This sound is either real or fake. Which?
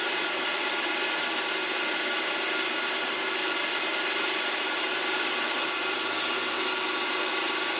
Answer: fake